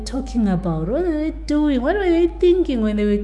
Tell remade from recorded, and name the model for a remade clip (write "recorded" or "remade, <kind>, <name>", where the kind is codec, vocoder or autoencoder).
remade, autoencoder, DAC-VAE